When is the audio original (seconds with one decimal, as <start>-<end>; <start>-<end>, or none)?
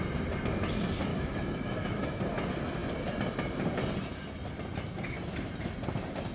0.0-1.1; 2.2-6.3